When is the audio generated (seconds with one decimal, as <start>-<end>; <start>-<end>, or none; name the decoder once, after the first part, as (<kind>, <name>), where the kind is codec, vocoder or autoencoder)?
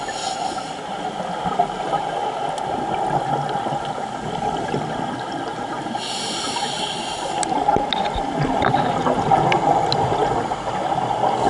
none